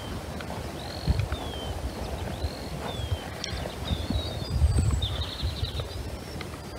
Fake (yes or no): yes